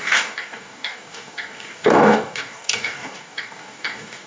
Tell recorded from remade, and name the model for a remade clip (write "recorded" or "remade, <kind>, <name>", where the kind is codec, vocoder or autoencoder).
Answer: remade, codec, DAC